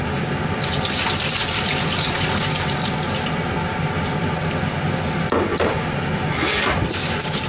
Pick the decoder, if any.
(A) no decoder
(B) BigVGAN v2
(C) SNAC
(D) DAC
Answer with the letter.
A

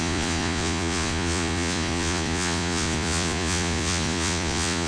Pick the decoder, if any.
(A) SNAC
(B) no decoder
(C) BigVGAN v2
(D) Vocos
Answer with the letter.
D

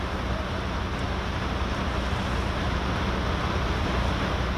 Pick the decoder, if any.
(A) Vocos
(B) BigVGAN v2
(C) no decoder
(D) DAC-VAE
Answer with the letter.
C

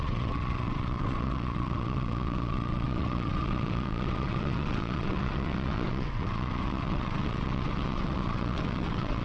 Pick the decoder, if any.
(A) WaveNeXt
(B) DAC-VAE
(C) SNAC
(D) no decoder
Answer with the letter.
A